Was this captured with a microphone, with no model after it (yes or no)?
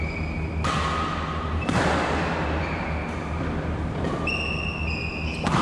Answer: yes